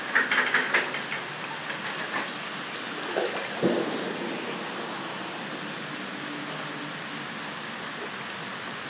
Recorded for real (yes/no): yes